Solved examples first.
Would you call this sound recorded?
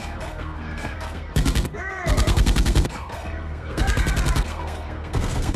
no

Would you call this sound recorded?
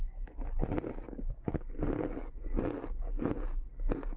yes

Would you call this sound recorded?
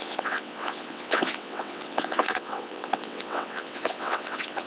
no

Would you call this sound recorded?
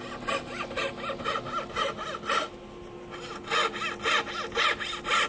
yes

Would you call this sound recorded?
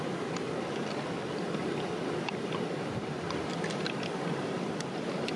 no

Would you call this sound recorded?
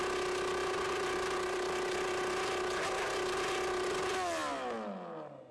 yes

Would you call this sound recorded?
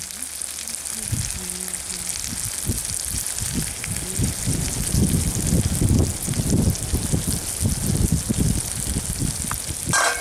yes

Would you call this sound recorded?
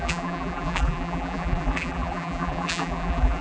no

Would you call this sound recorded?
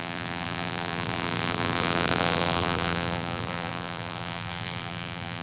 no